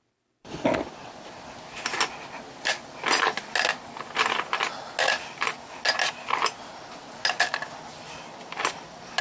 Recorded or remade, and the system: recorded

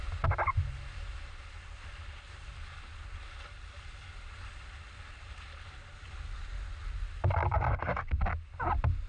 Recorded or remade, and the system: recorded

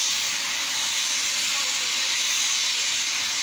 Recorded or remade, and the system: recorded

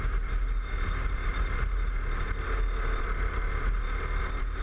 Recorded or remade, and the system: recorded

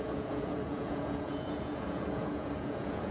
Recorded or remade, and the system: remade, vocoder, Vocos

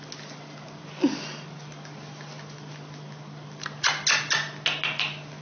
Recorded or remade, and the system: recorded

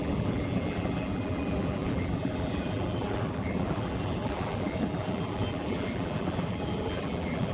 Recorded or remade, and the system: remade, vocoder, BigVGAN v2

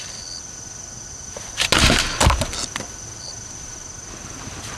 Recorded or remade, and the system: recorded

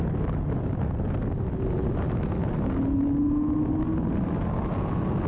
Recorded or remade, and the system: recorded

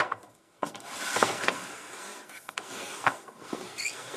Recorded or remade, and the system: remade, codec, SNAC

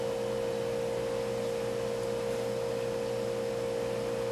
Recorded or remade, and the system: recorded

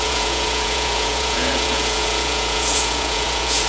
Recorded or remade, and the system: remade, vocoder, Vocos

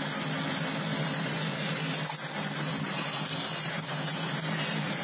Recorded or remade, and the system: recorded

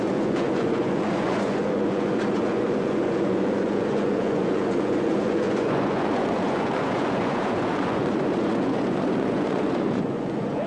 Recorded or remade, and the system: remade, vocoder, Vocos